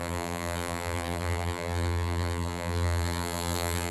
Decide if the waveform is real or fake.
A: fake